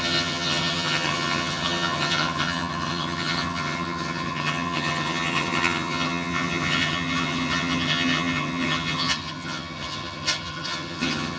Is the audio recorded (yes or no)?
no